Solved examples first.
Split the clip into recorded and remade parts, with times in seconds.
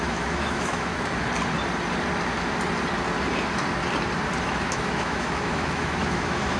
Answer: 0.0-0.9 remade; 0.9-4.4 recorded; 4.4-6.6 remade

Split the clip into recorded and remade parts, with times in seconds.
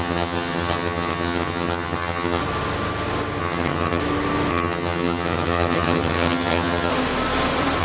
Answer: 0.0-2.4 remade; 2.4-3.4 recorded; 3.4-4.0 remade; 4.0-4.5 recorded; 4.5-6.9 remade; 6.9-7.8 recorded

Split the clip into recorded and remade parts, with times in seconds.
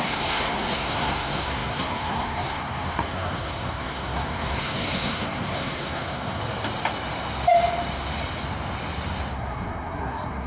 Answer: 0.0-6.4 remade; 6.4-9.3 recorded; 9.3-10.5 remade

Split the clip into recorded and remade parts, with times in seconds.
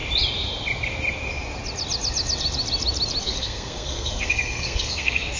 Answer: 0.0-3.2 recorded; 3.2-5.4 remade